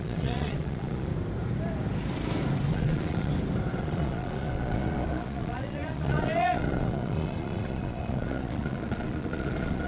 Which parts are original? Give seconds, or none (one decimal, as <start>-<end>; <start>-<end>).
1.1-2.7; 3.3-3.8